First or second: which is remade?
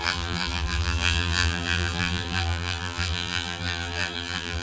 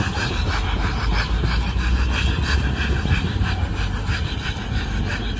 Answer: first